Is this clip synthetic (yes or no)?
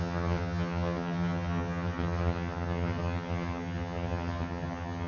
yes